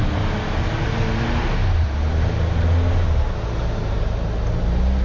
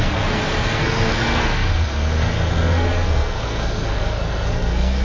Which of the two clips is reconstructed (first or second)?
second